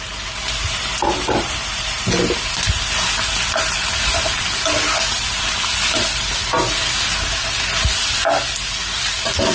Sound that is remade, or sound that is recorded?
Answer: recorded